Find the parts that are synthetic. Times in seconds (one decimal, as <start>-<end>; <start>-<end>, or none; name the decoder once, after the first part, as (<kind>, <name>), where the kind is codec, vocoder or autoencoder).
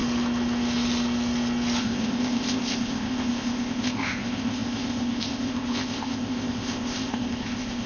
1.8-7.9 (codec, ZipCodec)